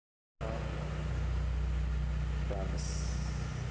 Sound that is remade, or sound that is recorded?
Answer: recorded